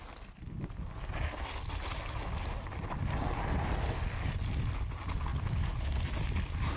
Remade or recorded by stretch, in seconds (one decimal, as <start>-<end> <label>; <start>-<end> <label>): 0.0-6.8 recorded